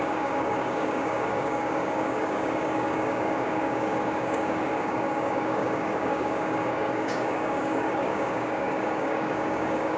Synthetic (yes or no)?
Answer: yes